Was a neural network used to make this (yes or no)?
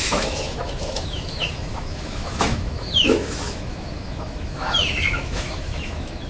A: yes